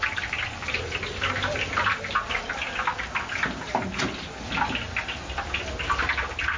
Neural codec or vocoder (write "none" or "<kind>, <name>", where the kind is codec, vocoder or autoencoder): none